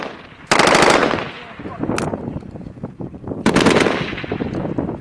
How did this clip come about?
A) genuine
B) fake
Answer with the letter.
A